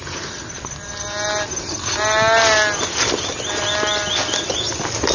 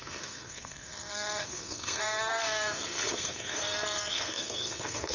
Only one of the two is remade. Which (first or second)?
second